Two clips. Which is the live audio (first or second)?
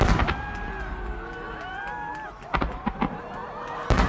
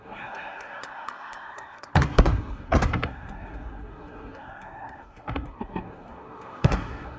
first